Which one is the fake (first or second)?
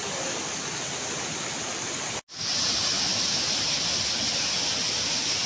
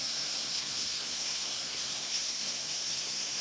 second